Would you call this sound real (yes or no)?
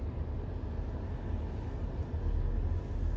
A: yes